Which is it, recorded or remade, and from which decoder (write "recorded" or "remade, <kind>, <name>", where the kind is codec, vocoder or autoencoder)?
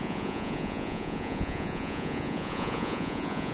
remade, vocoder, Vocos